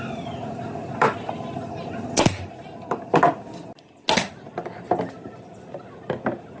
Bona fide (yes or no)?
yes